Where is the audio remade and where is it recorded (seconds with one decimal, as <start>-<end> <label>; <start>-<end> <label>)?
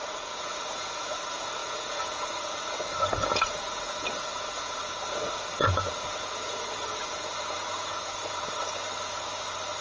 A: 0.0-8.6 remade; 8.6-9.8 recorded